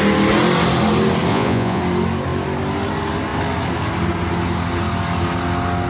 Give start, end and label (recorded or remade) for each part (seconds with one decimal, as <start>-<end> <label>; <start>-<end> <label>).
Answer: 0.0-1.3 recorded; 1.3-1.8 remade; 1.8-5.9 recorded

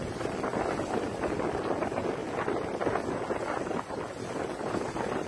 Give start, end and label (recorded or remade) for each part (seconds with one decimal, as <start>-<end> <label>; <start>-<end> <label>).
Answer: 0.0-5.3 recorded

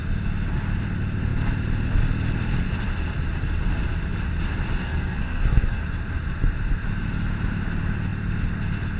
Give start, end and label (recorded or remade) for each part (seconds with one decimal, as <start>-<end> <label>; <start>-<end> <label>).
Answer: 0.0-4.8 recorded; 4.8-5.8 remade; 5.8-9.0 recorded

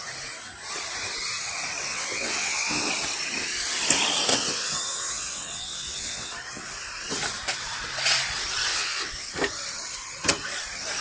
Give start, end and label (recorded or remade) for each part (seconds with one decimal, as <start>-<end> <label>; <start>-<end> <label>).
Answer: 0.0-1.9 recorded; 1.9-2.9 remade; 2.9-4.3 recorded; 4.3-6.3 remade; 6.3-8.7 recorded; 8.7-9.3 remade; 9.3-11.0 recorded

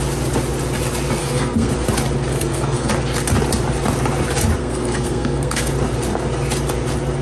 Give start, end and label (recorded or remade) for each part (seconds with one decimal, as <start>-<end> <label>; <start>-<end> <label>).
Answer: 0.0-1.2 recorded; 1.2-1.7 remade; 1.7-2.3 recorded; 2.3-2.9 remade; 2.9-4.6 recorded; 4.6-5.7 remade; 5.7-7.2 recorded

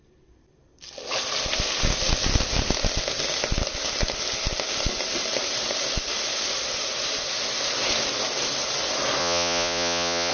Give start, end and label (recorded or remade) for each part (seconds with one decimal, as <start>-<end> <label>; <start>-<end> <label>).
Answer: 0.0-9.2 recorded; 9.2-10.3 remade

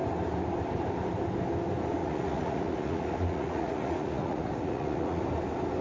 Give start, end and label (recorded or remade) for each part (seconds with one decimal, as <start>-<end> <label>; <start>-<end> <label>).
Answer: 0.0-2.0 recorded; 2.0-5.2 remade; 5.2-5.8 recorded

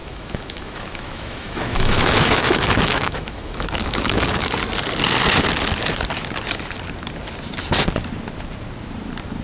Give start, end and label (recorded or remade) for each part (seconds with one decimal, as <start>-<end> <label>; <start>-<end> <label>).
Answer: 0.0-4.5 remade; 4.5-9.4 recorded